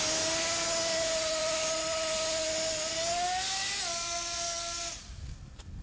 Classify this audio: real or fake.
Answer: real